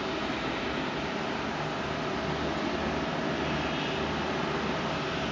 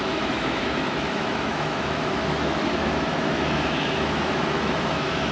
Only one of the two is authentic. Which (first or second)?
first